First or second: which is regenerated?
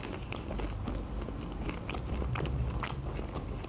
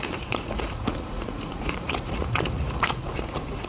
second